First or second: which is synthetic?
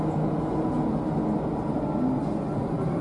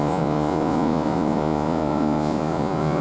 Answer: second